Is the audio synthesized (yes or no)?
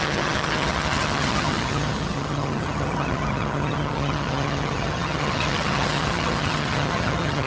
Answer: yes